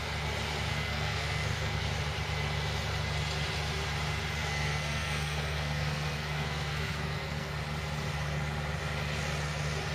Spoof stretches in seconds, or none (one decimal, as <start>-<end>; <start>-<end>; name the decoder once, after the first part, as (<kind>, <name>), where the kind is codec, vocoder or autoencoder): 0.7-1.8 (codec, SNAC); 4.4-7.5